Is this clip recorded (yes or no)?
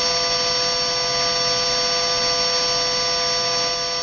yes